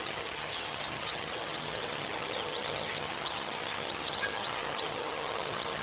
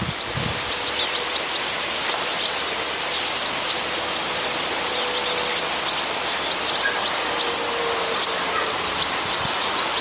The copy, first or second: first